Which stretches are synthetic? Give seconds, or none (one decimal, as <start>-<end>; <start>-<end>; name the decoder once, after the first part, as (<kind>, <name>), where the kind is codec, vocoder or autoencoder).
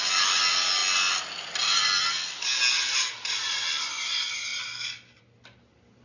none